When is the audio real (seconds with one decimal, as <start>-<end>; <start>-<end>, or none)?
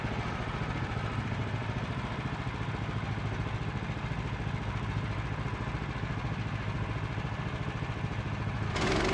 0.0-9.1